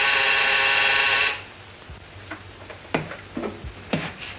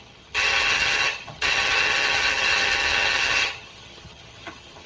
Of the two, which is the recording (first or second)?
first